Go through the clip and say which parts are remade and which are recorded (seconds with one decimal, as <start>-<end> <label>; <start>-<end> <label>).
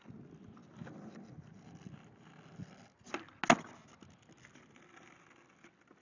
0.0-6.0 recorded